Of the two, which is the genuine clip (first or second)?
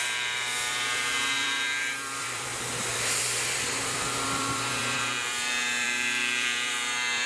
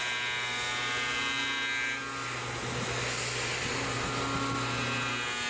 second